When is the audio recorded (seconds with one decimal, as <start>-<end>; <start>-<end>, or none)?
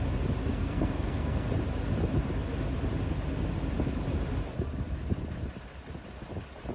0.0-0.4; 1.5-6.7